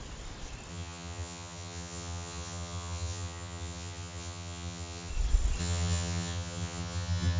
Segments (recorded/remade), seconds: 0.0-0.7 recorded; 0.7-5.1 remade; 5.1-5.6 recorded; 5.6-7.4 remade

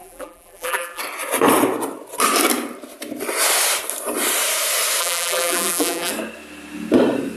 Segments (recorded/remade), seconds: 0.0-1.0 remade; 1.0-5.0 recorded; 5.0-6.1 remade; 6.1-7.4 recorded

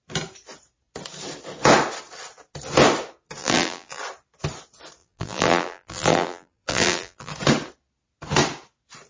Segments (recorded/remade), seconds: 0.0-3.4 recorded; 3.4-4.0 remade; 4.0-5.0 recorded; 5.0-7.3 remade; 7.3-9.1 recorded

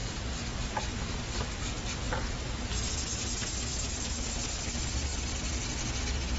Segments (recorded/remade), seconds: 0.0-3.7 recorded; 3.7-4.3 remade; 4.3-6.4 recorded

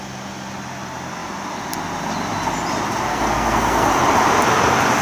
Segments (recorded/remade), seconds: 0.0-3.1 recorded; 3.1-3.9 remade; 3.9-5.0 recorded

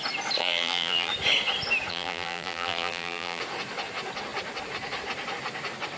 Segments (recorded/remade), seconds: 0.0-0.4 recorded; 0.4-1.1 remade; 1.1-1.9 recorded; 1.9-3.4 remade; 3.4-6.0 recorded

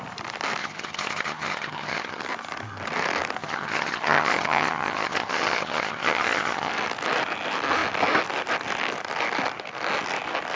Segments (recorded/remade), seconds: 0.0-0.6 recorded; 0.6-2.2 remade; 2.2-3.4 recorded; 3.4-6.7 remade; 6.7-10.6 recorded